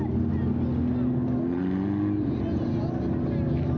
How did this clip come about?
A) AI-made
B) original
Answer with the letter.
B